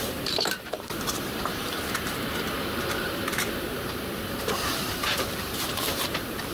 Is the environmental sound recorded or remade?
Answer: remade